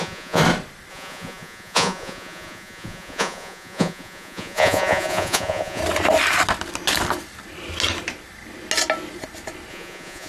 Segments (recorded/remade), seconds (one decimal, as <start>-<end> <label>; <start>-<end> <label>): 0.0-0.4 remade; 0.4-0.9 recorded; 0.9-5.8 remade; 5.8-9.7 recorded; 9.7-10.3 remade